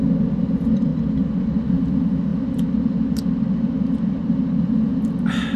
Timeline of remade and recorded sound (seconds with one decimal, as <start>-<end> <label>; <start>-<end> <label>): 0.0-5.6 recorded